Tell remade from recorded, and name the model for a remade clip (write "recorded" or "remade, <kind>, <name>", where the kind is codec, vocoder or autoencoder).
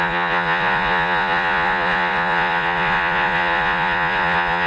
remade, vocoder, Vocos